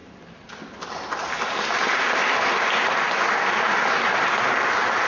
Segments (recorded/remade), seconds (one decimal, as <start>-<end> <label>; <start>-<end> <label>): 0.0-5.1 recorded